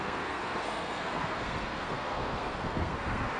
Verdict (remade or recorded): remade